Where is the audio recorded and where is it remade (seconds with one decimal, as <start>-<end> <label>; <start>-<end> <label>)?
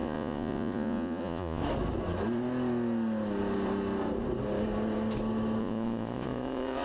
0.0-1.6 remade; 1.6-5.6 recorded; 5.6-6.8 remade